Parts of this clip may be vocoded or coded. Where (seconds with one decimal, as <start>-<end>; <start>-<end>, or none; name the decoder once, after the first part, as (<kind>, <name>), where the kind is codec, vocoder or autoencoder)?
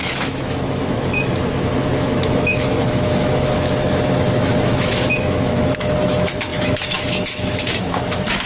0.0-8.5 (autoencoder, DAC-VAE)